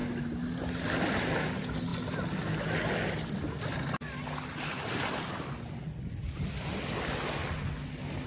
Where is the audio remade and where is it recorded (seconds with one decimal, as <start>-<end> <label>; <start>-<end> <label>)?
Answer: 0.0-8.3 recorded